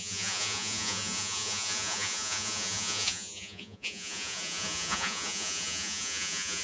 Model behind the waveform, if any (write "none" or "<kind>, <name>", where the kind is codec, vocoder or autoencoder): vocoder, Vocos